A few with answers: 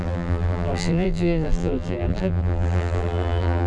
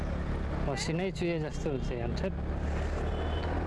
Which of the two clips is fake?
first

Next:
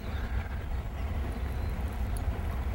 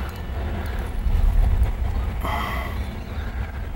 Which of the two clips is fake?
first